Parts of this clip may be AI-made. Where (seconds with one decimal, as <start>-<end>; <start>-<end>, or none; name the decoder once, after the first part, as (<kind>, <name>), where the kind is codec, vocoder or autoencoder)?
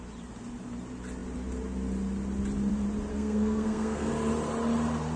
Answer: 3.1-4.1 (codec, SNAC)